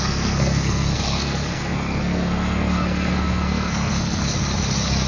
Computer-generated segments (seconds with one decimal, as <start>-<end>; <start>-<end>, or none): 0.0-4.2